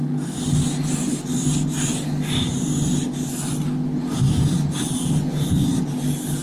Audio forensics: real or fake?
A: real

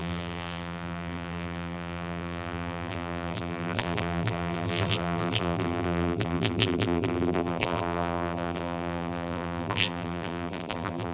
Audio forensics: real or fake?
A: fake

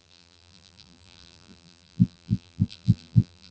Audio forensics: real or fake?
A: fake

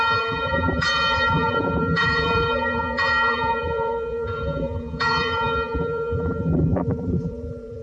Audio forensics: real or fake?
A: fake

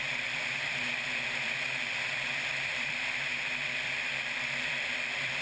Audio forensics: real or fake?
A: fake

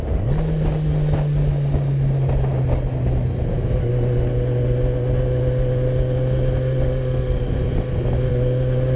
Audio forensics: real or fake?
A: real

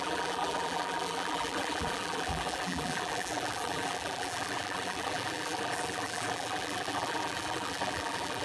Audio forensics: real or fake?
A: fake